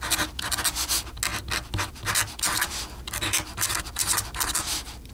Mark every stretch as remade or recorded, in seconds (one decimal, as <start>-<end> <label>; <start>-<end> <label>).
0.0-5.1 recorded